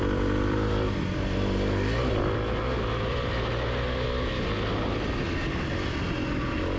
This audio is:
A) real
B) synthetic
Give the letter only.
A